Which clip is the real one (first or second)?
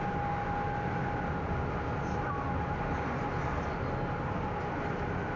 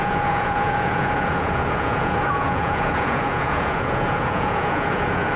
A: first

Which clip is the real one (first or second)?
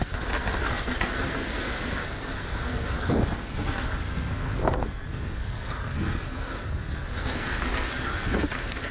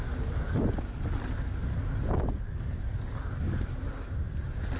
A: second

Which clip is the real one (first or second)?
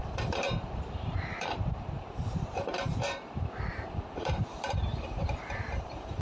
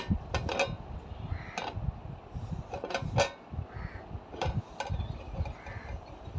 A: second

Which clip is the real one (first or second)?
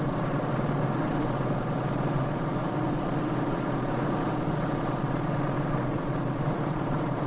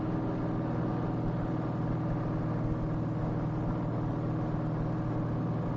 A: second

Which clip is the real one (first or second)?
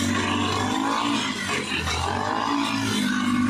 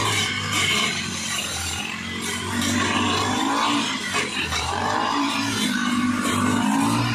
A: first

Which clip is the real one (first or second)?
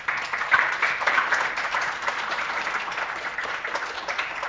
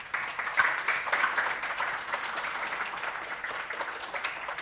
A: second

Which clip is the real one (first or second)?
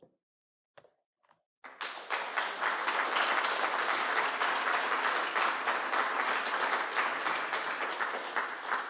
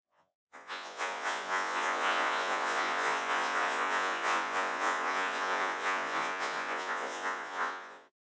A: first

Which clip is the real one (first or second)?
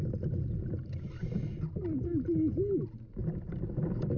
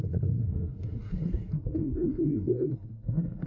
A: first